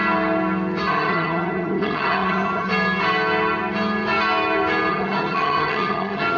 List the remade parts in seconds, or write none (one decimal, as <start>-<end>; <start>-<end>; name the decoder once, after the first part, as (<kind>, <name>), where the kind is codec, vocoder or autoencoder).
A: 0.9-2.7 (vocoder, HiFi-GAN); 4.9-6.4